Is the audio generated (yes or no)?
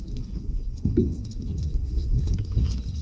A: yes